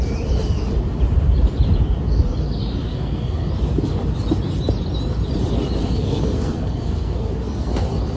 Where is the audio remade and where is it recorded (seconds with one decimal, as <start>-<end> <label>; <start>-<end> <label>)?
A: 0.0-2.9 recorded; 2.9-3.5 remade; 3.5-5.8 recorded; 5.8-8.2 remade